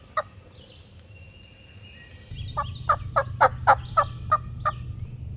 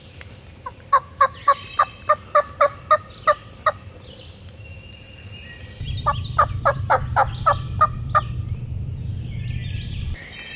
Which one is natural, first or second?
first